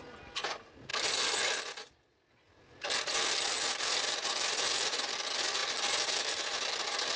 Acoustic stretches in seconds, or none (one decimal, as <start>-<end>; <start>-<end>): 0.0-7.2